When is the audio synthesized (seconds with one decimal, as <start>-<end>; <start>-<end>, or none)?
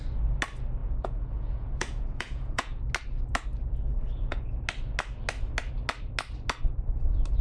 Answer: 0.8-2.9; 3.9-4.6